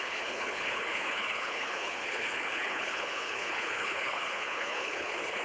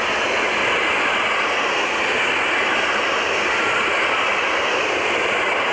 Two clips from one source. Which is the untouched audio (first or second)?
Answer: second